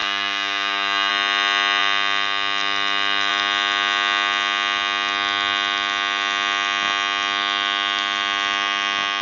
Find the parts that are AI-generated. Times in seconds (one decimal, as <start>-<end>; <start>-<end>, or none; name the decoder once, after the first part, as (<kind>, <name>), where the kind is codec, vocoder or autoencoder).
0.0-1.1 (codec, DAC)